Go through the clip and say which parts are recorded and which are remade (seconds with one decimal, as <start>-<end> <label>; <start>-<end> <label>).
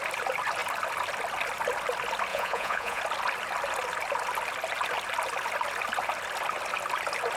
0.0-2.3 recorded; 2.3-3.0 remade; 3.0-7.4 recorded